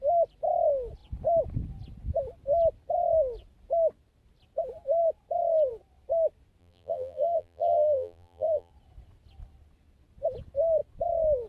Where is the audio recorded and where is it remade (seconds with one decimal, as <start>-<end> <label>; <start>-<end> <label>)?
0.0-6.6 recorded; 6.6-8.7 remade; 8.7-11.5 recorded